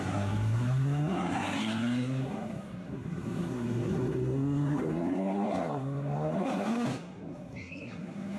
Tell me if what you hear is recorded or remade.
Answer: remade